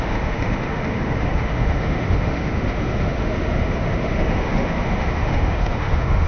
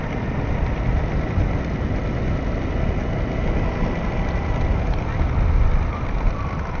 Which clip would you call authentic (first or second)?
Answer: second